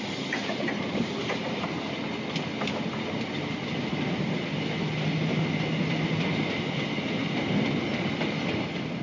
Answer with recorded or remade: recorded